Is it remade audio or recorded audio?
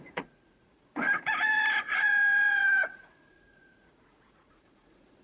remade